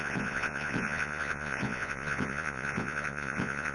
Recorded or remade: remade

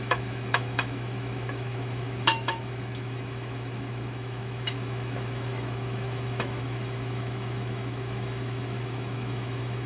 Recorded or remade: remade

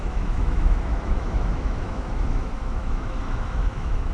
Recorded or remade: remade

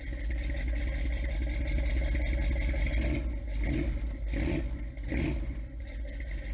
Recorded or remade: recorded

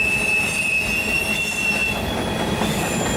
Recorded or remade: recorded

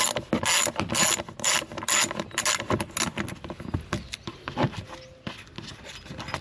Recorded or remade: recorded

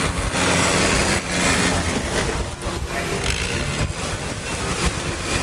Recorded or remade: recorded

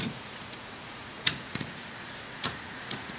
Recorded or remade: remade